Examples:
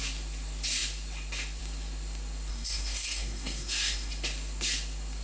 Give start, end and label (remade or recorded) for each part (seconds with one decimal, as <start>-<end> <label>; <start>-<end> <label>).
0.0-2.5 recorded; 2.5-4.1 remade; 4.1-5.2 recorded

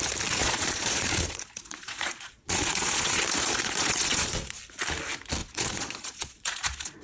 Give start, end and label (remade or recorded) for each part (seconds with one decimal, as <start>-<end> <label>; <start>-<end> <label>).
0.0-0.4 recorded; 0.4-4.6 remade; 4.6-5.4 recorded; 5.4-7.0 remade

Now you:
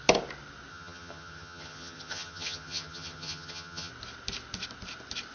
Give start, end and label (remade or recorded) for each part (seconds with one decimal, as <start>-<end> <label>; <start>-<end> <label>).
0.0-0.7 recorded; 0.7-3.9 remade; 3.9-5.3 recorded

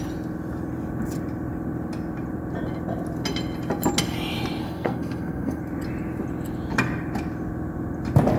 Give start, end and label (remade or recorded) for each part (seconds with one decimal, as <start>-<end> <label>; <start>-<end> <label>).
0.0-4.6 recorded; 4.6-5.6 remade; 5.6-8.4 recorded